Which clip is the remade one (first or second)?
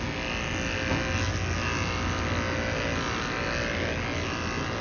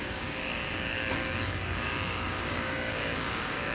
second